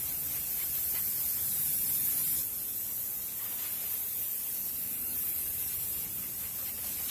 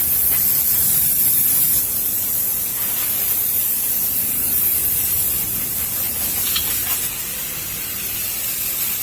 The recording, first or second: second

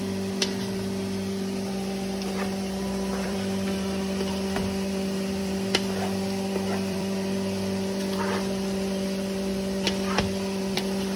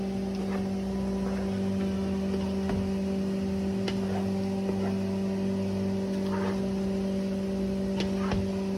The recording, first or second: second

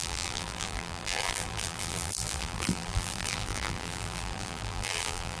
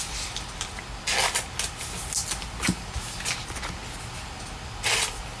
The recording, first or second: second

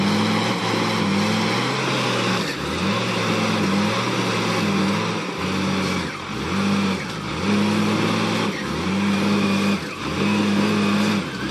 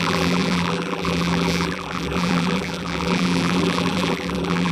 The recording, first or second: first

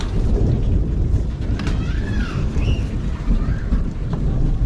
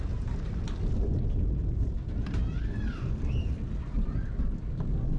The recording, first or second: second